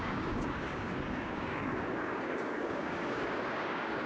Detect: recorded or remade remade